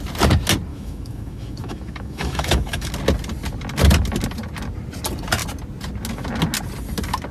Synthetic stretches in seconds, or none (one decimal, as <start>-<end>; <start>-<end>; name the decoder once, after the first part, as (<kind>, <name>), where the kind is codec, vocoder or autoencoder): 0.7-2.9 (autoencoder, DAC-VAE)